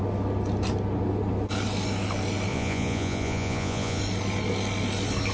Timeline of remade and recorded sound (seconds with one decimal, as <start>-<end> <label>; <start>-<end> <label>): 0.0-2.5 recorded; 2.5-4.0 remade; 4.0-5.3 recorded